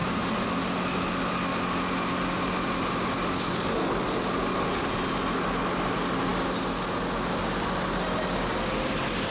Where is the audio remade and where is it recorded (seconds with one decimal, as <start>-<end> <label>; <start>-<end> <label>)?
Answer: 0.0-9.3 recorded